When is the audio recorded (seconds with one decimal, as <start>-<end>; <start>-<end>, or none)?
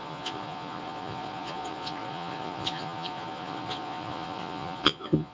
none